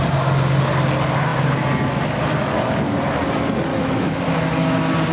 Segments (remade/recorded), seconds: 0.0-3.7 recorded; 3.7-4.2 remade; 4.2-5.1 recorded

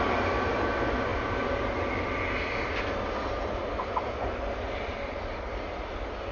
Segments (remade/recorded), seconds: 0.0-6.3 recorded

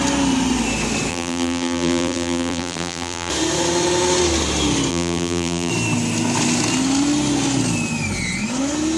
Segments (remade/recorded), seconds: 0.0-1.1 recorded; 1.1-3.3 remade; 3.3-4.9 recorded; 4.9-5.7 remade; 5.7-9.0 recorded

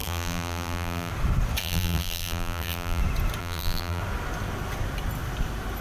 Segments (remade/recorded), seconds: 0.0-1.1 remade; 1.1-1.6 recorded; 1.6-3.0 remade; 3.0-3.4 recorded; 3.4-4.0 remade; 4.0-5.8 recorded

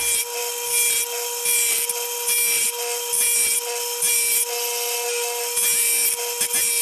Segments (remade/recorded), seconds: 0.0-6.8 recorded

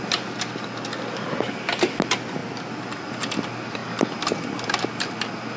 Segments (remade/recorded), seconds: 0.0-3.8 recorded; 3.8-4.5 remade; 4.5-5.6 recorded